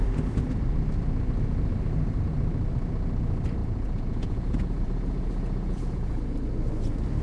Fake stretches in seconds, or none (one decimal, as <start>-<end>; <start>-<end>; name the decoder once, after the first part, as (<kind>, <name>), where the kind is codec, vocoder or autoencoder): 3.6-6.2 (vocoder, Vocos)